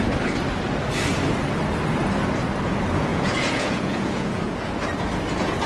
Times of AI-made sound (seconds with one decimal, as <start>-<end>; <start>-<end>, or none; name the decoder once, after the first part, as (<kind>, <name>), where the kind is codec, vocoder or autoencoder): 3.1-4.8 (vocoder, Vocos)